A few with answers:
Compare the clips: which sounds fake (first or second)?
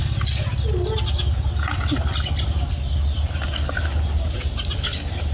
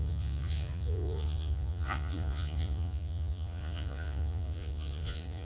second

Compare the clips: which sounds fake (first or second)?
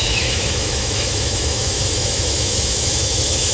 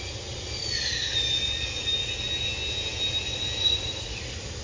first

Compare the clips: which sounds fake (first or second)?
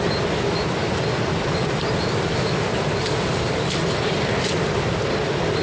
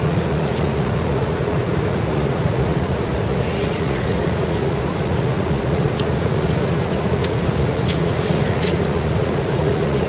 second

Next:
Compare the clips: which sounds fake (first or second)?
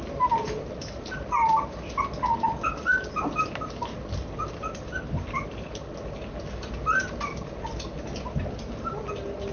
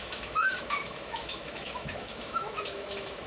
second